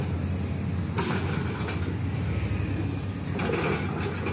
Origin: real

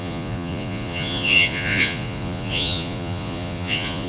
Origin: fake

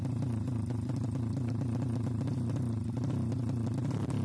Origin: real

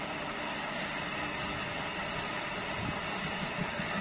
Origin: real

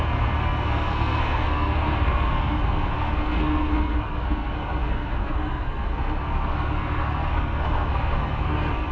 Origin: fake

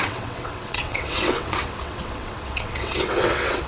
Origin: fake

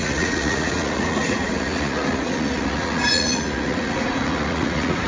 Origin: fake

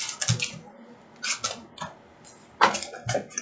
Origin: real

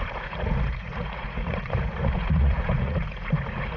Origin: fake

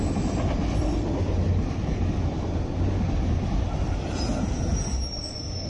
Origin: real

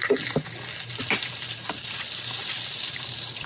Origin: real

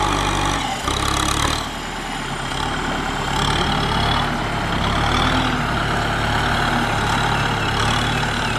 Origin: real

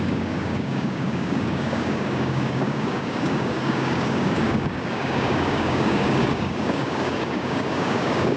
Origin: fake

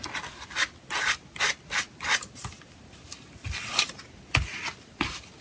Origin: real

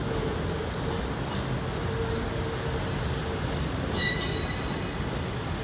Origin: real